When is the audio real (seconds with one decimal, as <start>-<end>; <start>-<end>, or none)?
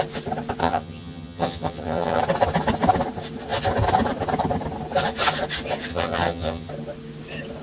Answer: 0.0-0.6; 2.2-5.9; 6.7-7.6